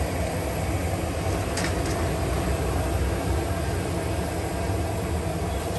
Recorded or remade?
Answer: recorded